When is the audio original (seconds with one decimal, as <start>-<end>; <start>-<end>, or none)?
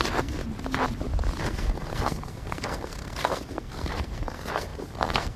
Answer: 0.4-1.4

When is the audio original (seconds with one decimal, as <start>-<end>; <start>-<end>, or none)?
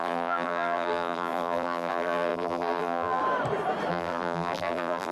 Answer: 3.2-3.9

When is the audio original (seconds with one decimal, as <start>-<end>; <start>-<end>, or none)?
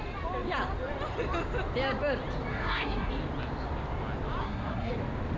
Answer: 0.0-2.5; 3.1-4.4; 4.9-5.4